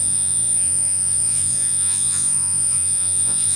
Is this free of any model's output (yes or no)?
no